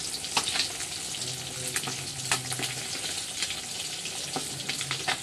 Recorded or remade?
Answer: recorded